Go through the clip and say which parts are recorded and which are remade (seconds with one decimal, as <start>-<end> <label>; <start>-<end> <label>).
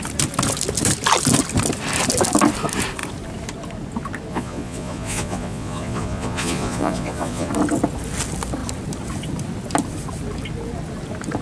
0.0-4.3 recorded; 4.3-7.5 remade; 7.5-11.4 recorded